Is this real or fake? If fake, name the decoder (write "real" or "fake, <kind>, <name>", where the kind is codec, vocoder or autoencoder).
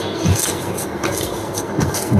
fake, codec, SNAC